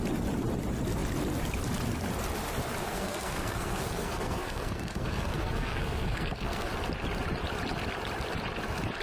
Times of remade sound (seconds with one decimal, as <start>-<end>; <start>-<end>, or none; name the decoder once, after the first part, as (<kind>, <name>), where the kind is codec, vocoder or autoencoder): 2.8-6.7 (codec, SNAC)